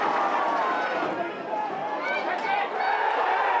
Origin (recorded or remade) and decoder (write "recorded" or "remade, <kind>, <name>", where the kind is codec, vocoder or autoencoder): recorded